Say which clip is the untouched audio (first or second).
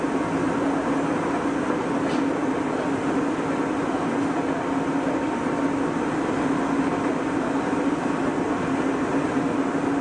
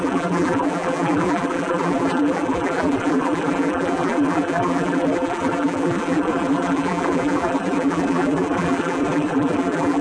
first